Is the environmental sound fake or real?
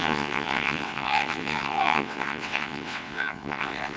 fake